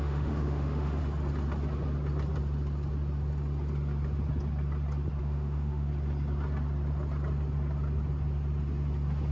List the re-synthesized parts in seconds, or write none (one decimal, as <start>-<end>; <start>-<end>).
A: 0.0-1.0; 5.2-5.9